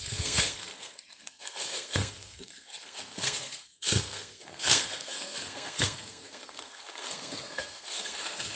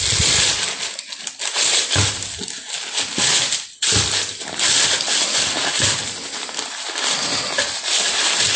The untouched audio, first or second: second